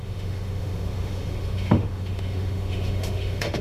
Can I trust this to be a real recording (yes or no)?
no